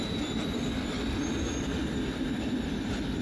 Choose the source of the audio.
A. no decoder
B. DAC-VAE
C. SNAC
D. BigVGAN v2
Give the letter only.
A